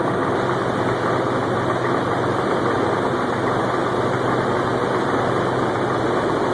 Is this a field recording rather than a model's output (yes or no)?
yes